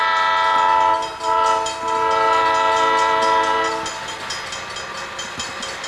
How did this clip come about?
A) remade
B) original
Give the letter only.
B